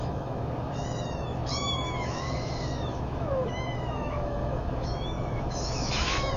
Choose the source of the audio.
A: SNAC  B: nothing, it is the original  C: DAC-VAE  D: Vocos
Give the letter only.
C